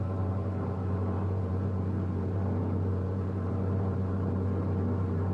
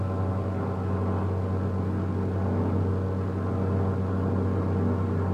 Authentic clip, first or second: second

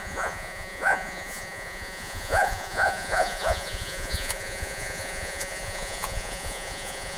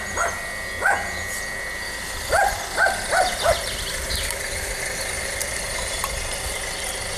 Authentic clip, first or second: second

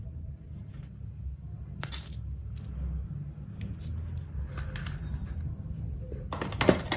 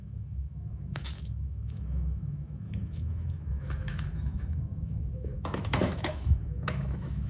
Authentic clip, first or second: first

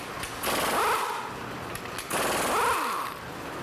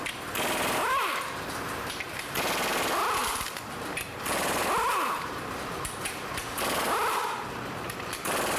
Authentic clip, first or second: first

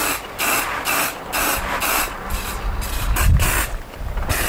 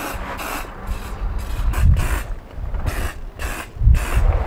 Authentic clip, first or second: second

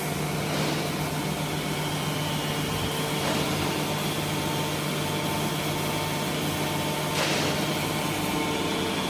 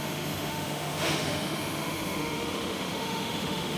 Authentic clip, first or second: first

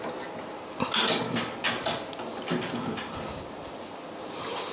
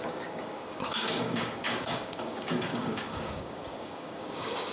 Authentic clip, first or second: first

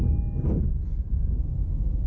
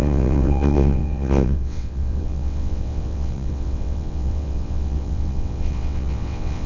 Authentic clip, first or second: first